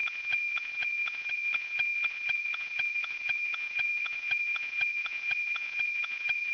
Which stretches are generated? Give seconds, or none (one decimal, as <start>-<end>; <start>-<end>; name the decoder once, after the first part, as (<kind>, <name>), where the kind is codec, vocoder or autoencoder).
0.0-6.5 (vocoder, Vocos)